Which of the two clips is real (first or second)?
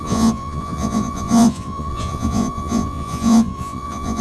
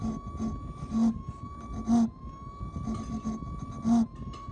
second